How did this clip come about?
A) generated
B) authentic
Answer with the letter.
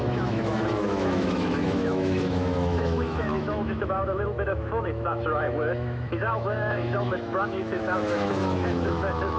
A